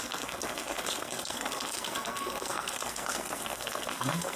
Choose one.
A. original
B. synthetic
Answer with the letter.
B